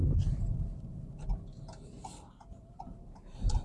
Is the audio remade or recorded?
remade